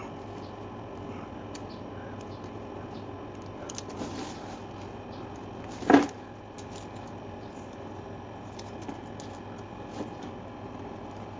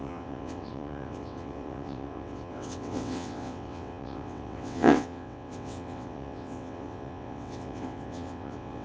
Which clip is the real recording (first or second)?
first